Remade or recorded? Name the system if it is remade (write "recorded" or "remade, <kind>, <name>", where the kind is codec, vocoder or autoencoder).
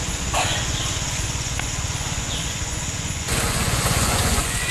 remade, vocoder, Vocos